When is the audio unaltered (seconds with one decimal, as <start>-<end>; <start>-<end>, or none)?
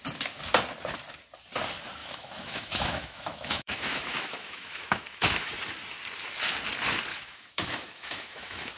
0.0-2.0; 5.5-7.1